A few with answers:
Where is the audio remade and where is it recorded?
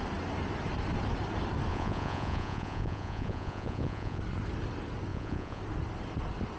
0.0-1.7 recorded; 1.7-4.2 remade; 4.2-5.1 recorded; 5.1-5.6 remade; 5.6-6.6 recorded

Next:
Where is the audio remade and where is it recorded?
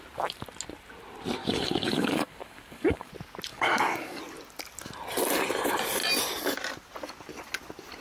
0.0-1.4 recorded; 1.4-3.1 remade; 3.1-3.5 recorded; 3.5-4.2 remade; 4.2-8.0 recorded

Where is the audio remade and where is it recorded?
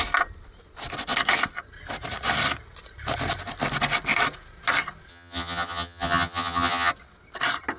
0.0-5.1 recorded; 5.1-6.9 remade; 6.9-7.8 recorded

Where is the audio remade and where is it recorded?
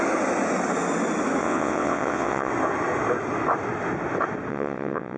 0.0-1.4 recorded; 1.4-2.5 remade; 2.5-4.5 recorded; 4.5-5.2 remade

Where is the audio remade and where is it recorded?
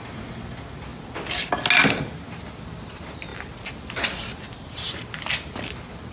0.0-6.1 recorded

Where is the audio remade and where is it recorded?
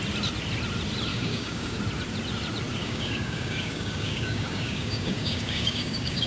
0.0-1.1 recorded; 1.1-1.8 remade; 1.8-2.8 recorded; 2.8-6.3 remade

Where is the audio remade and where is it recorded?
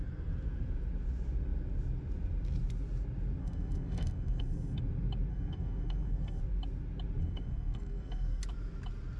0.0-3.4 recorded; 3.4-4.8 remade; 4.8-5.3 recorded; 5.3-6.4 remade; 6.4-7.2 recorded; 7.2-8.4 remade; 8.4-9.2 recorded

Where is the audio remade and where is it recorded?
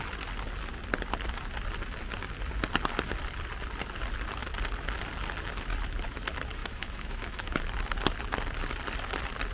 0.0-6.6 recorded; 6.6-7.6 remade; 7.6-9.5 recorded